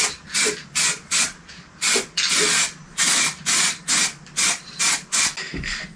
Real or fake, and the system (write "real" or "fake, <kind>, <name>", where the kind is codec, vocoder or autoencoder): real